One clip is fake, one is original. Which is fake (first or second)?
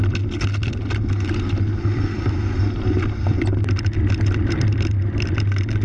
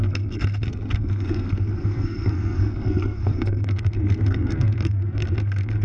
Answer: second